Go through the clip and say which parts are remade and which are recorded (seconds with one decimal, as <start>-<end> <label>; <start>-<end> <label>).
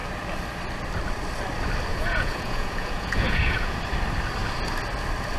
0.0-1.9 recorded; 1.9-3.8 remade; 3.8-5.4 recorded